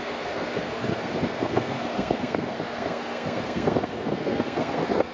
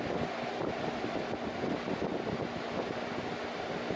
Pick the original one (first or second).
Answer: second